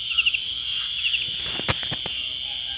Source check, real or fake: real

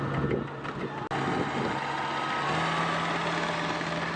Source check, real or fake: real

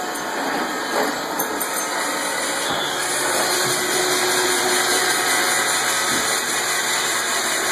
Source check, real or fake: real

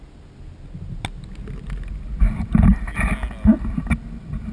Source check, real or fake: real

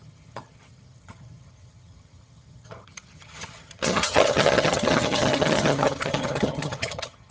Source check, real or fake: fake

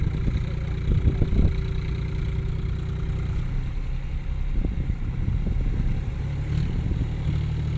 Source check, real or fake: real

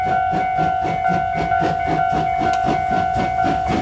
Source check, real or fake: real